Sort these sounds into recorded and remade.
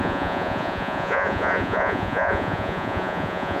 remade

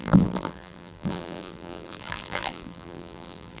remade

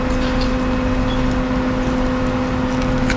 recorded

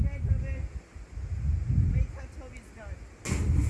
recorded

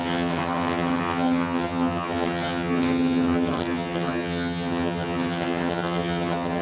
remade